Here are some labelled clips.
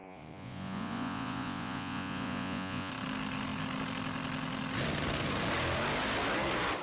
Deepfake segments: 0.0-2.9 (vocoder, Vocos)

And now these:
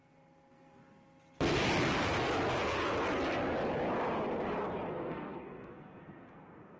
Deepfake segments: 0.0-0.8 (codec, SNAC); 4.9-6.8

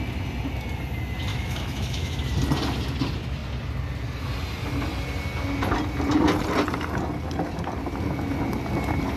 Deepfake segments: 1.3-2.3 (autoencoder, DAC-VAE)

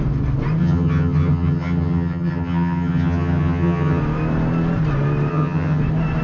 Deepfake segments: 0.6-4.0 (vocoder, HiFi-GAN); 5.3-5.8